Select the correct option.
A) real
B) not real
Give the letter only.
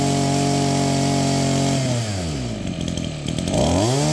A